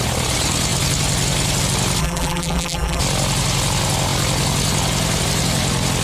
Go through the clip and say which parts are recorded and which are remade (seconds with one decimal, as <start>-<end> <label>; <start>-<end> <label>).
0.0-2.0 recorded; 2.0-3.0 remade; 3.0-6.0 recorded